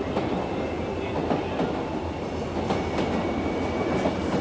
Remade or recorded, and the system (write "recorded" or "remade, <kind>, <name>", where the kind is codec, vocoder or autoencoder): recorded